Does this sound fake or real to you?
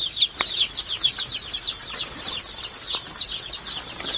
real